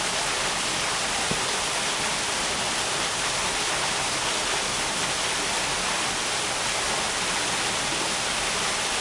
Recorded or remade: recorded